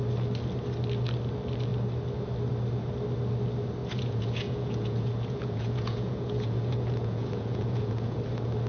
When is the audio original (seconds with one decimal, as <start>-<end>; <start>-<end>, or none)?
0.0-3.8; 8.2-8.7